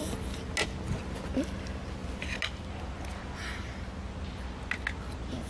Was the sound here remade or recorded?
recorded